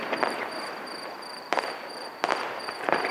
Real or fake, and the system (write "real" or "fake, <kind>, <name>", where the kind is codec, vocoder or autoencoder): real